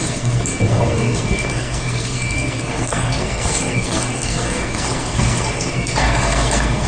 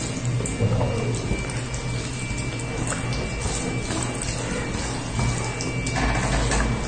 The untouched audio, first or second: second